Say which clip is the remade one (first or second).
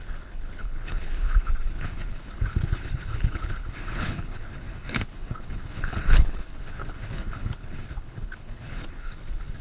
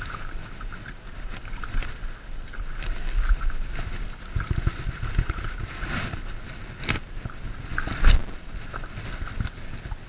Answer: first